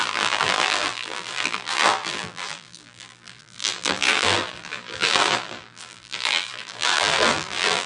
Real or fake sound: fake